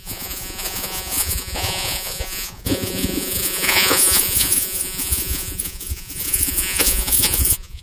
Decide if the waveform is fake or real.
fake